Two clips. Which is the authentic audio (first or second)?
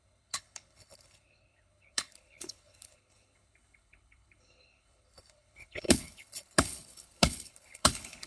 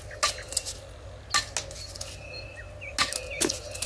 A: second